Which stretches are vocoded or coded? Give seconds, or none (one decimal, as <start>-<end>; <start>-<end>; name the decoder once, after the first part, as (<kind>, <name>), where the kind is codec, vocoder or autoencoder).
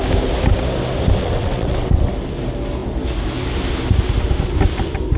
1.2-2.0 (vocoder, WaveNeXt)